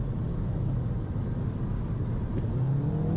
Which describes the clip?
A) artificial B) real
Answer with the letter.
B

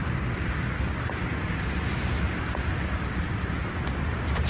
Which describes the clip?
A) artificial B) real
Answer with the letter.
A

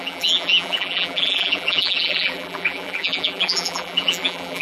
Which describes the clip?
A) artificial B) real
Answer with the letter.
A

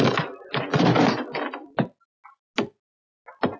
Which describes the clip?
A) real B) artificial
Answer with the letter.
A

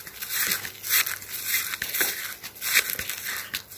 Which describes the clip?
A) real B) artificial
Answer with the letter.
A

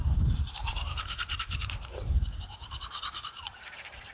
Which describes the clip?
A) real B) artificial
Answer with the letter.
B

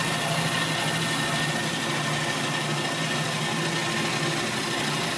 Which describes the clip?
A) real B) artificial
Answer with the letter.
A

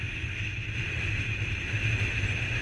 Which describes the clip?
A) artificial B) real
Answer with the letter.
A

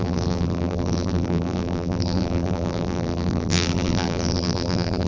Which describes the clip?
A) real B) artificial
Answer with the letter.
B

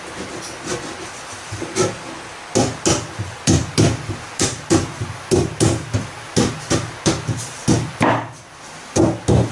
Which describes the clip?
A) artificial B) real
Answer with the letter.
B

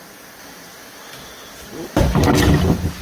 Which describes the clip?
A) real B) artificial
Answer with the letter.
A